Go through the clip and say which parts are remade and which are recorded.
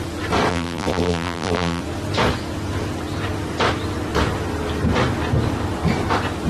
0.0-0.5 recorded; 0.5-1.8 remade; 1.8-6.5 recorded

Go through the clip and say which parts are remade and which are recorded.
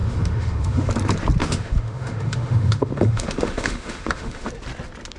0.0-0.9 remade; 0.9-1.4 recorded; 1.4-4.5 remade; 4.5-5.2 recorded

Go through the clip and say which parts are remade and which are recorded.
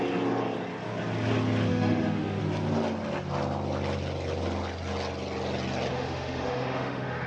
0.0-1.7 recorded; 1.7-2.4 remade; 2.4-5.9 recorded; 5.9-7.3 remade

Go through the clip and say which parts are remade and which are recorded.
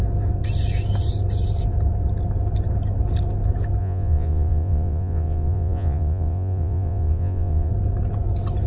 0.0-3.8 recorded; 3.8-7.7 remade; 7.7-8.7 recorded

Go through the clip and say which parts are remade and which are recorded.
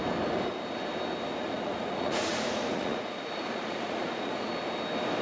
0.0-1.4 recorded; 1.4-4.5 remade; 4.5-5.2 recorded